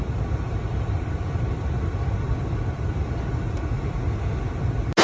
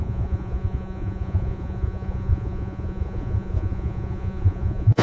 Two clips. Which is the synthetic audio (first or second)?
second